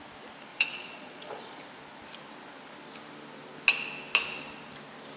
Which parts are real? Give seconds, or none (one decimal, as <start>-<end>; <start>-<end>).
0.0-0.5; 1.6-5.2